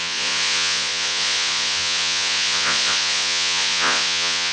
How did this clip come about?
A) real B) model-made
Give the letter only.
B